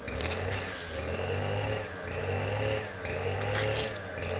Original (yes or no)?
yes